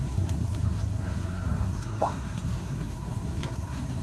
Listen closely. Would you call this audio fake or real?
fake